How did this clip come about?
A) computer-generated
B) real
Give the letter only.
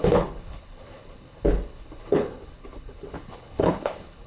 A